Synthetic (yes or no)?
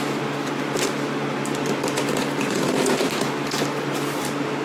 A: no